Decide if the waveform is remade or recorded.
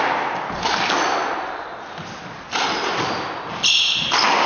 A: recorded